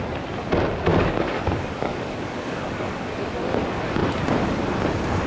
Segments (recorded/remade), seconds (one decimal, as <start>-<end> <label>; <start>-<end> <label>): 0.0-0.9 recorded; 0.9-3.5 remade; 3.5-5.3 recorded